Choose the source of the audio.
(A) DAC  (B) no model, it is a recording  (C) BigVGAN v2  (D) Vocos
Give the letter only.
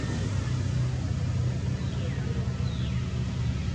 B